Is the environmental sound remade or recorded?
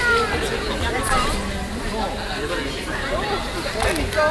recorded